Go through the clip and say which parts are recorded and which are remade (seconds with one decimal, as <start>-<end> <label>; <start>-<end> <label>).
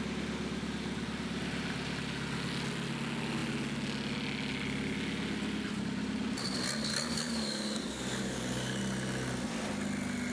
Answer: 0.0-6.9 recorded; 6.9-8.8 remade; 8.8-10.3 recorded